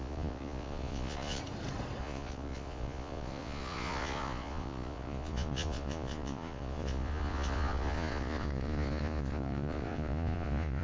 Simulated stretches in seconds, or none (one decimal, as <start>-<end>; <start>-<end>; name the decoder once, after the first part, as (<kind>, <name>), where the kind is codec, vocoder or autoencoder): 0.0-1.4 (vocoder, Vocos); 2.0-10.8